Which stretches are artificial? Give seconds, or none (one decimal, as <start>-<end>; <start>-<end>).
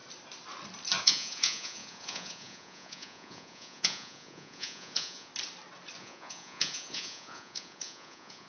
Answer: 1.0-5.3; 6.0-8.5